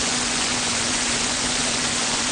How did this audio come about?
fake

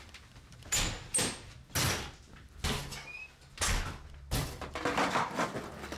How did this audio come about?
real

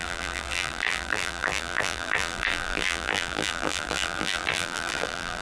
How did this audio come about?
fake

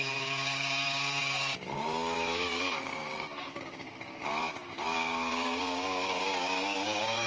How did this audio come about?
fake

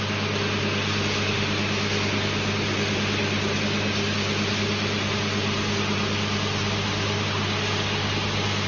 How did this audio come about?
real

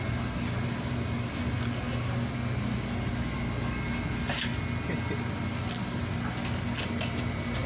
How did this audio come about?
real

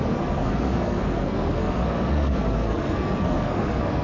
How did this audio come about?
fake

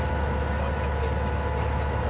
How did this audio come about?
real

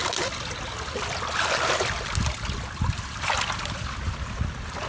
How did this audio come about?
real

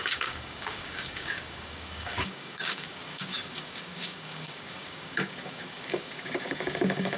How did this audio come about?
fake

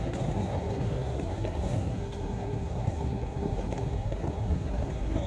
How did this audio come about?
fake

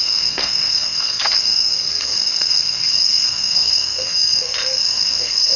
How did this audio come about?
fake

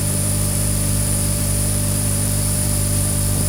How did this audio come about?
fake